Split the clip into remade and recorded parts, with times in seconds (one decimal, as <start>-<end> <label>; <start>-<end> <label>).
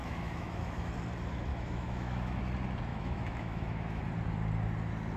0.0-0.9 remade; 0.9-1.5 recorded; 1.5-2.4 remade; 2.4-2.9 recorded; 2.9-4.0 remade; 4.0-5.2 recorded